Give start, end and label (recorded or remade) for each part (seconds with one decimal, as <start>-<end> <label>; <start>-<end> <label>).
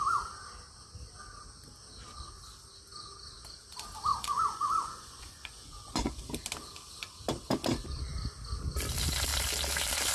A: 0.0-4.1 recorded; 4.1-6.2 remade; 6.2-10.1 recorded